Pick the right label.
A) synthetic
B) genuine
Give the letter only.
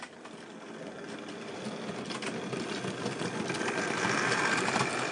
B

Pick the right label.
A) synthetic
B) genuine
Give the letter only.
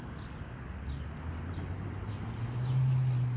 B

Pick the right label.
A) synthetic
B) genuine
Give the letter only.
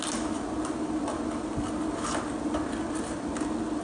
B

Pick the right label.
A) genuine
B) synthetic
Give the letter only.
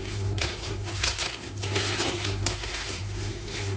B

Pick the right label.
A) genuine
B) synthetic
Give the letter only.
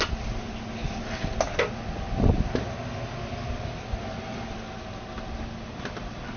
A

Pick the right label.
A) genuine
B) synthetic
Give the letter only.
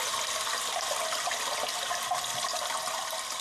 A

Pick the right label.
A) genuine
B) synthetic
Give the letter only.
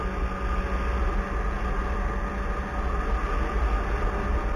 A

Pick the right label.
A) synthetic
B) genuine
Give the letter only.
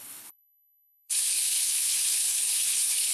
A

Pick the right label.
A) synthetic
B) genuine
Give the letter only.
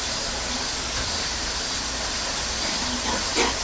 B